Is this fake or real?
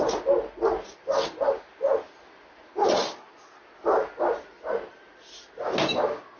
real